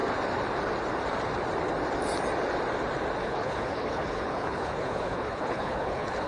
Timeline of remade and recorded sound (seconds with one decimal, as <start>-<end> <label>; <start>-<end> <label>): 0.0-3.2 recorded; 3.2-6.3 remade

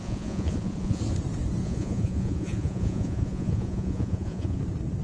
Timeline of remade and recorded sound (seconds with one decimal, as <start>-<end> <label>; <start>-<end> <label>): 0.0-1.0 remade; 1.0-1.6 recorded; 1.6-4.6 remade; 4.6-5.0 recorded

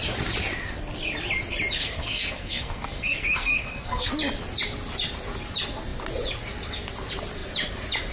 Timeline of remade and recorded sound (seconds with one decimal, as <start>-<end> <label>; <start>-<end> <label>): 0.0-1.8 recorded; 1.8-4.1 remade; 4.1-8.1 recorded

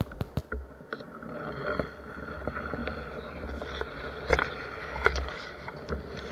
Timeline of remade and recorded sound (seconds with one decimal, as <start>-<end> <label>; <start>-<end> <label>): 0.0-4.8 recorded; 4.8-5.7 remade; 5.7-6.3 recorded

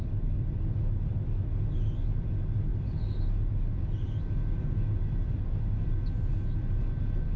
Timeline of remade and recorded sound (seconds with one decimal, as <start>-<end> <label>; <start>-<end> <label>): 0.0-7.4 recorded